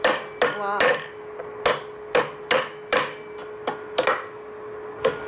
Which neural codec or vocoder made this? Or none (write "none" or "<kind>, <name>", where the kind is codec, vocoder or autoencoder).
none